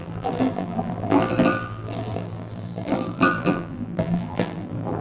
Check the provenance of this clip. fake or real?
fake